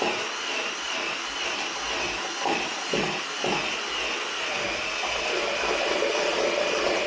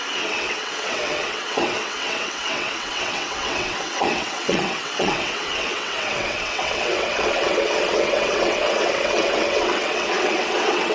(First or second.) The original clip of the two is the first